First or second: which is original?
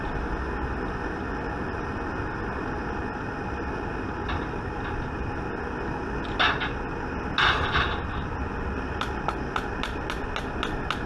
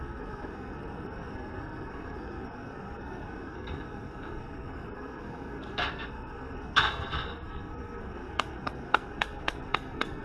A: first